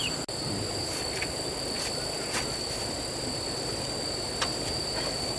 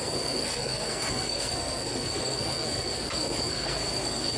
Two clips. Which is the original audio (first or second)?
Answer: first